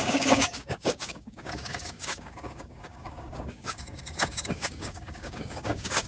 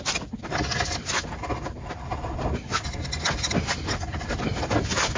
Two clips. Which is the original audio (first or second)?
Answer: second